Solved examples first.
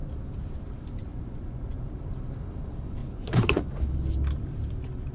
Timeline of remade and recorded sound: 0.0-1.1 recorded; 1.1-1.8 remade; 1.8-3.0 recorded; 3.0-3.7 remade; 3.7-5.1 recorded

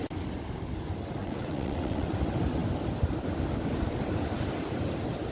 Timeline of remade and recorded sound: 0.0-1.2 recorded; 1.2-2.1 remade; 2.1-5.3 recorded

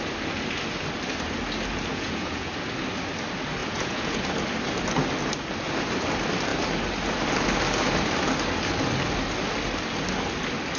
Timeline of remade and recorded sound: 0.0-1.9 recorded; 1.9-2.5 remade; 2.5-3.6 recorded; 3.6-4.2 remade; 4.2-10.8 recorded

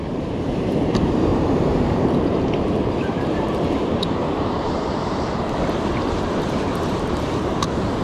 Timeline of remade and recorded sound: 0.0-8.0 remade